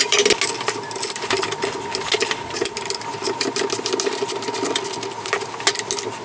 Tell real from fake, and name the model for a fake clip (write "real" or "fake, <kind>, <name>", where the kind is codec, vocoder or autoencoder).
real